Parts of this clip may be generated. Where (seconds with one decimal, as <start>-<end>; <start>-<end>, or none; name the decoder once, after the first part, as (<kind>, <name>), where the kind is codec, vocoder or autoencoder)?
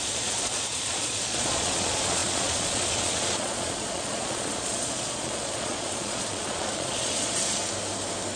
0.0-7.6 (vocoder, Vocos)